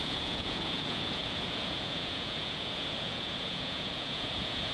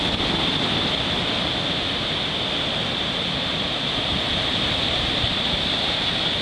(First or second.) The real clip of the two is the second